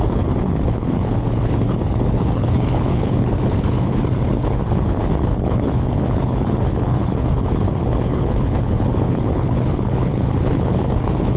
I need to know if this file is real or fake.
fake